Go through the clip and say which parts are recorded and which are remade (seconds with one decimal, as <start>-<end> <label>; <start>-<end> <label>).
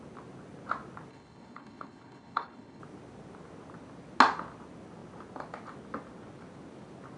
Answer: 0.0-1.1 recorded; 1.1-2.8 remade; 2.8-7.2 recorded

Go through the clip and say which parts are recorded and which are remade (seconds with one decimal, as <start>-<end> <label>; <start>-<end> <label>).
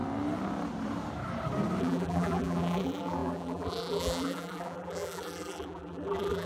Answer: 0.0-1.8 recorded; 1.8-6.5 remade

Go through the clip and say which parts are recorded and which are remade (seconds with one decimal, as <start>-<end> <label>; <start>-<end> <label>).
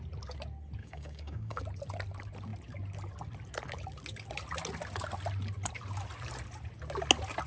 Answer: 0.0-0.8 recorded; 0.8-1.6 remade; 1.6-7.5 recorded